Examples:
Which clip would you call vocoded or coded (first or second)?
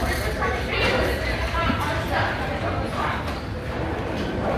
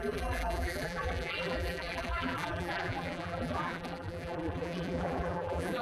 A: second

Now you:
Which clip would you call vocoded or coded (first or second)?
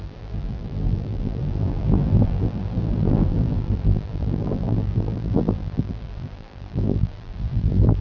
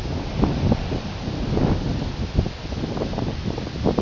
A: first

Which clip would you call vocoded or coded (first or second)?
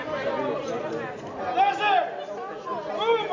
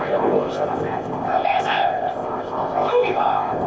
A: second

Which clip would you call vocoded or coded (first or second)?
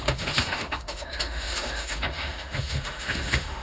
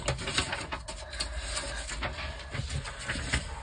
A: first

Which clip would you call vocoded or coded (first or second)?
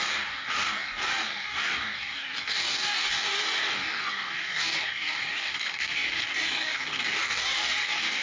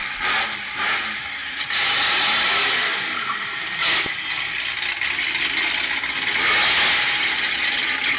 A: first